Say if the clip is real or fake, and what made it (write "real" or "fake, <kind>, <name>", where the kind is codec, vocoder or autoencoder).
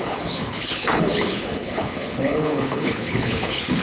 fake, codec, HILCodec